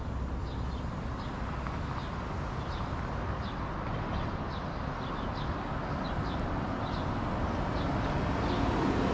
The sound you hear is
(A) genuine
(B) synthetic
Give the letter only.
A